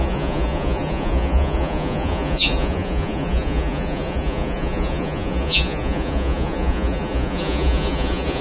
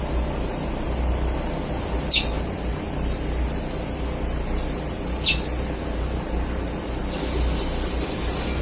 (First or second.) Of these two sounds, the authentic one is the second